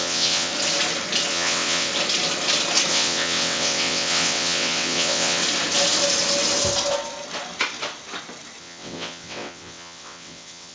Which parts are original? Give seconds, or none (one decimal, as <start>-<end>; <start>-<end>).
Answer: 0.5-1.3; 1.9-2.9; 5.4-8.6